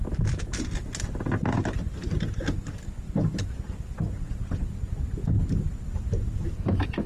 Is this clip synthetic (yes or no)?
no